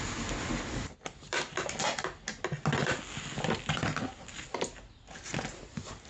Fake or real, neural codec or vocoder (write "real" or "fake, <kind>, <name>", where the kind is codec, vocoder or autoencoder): real